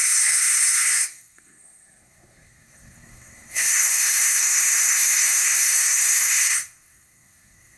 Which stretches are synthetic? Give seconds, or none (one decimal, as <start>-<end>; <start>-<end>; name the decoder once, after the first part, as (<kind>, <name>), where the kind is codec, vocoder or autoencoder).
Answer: 0.0-7.8 (codec, SNAC)

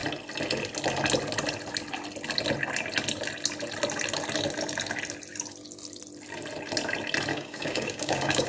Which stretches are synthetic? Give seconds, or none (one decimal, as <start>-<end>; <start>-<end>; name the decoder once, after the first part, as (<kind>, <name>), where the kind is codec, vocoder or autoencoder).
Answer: 7.3-8.5 (codec, DAC)

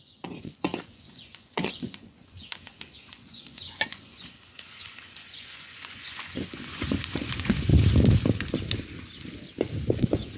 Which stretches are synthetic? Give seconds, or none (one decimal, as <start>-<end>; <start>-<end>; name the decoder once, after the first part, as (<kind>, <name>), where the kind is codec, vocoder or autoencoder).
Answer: 0.0-7.7 (vocoder, Vocos); 10.0-10.4

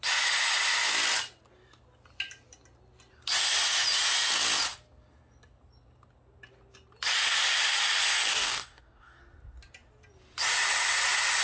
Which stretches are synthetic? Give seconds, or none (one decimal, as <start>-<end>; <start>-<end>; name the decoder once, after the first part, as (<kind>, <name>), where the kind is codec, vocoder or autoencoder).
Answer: 8.3-9.2 (codec, DAC)

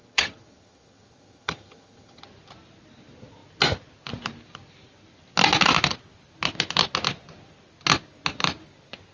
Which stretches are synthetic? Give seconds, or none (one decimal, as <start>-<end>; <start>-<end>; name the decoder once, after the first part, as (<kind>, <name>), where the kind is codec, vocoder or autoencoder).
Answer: 0.0-2.2 (vocoder, HiFi-GAN)

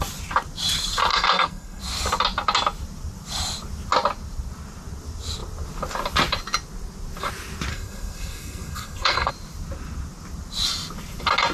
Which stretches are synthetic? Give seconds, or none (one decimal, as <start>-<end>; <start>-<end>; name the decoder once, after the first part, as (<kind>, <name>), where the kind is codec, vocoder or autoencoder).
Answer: 1.1-1.8 (codec, SNAC); 7.7-9.3

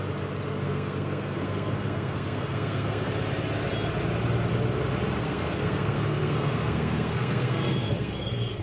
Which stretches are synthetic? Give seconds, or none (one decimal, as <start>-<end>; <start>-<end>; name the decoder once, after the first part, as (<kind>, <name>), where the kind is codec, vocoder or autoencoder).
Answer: 0.5-3.1 (codec, SNAC); 5.2-8.6

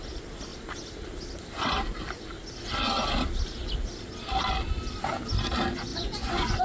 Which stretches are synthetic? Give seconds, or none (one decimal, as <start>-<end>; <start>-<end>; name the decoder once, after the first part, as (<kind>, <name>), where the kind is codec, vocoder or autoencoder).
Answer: 5.9-6.6 (vocoder, Vocos)